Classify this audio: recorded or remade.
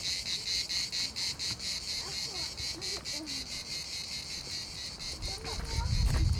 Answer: recorded